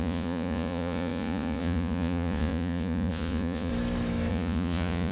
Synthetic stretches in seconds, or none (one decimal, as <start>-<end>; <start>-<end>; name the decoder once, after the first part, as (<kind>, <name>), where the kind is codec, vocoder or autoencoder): 0.0-3.7 (vocoder, Vocos); 4.3-5.1